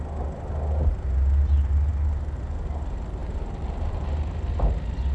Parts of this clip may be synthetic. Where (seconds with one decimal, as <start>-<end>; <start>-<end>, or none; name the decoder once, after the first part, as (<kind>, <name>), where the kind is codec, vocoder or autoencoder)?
1.9-2.4 (vocoder, BigVGAN v2); 3.2-4.2